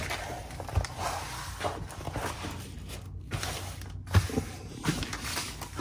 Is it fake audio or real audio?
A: real